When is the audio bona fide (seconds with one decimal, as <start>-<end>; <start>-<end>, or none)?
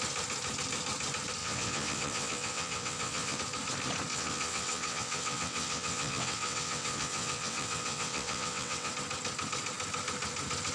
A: 0.0-1.4; 3.4-4.1; 8.9-10.7